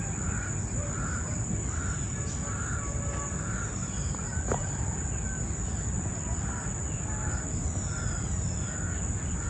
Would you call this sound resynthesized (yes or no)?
no